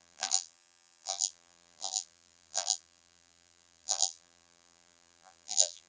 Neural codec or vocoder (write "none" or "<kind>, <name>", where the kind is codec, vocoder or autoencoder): vocoder, BigVGAN v2